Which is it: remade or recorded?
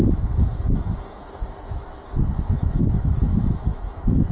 remade